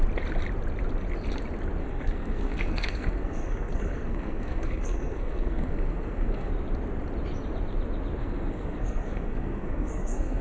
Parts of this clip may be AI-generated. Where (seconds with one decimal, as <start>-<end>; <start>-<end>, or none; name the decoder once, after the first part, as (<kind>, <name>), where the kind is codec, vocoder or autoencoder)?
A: 1.8-6.5 (codec, SNAC); 8.2-10.4